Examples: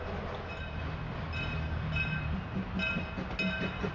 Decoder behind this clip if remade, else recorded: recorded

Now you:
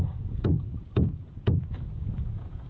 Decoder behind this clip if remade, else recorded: remade, vocoder, Vocos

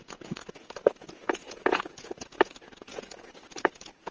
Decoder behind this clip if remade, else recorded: remade, vocoder, Vocos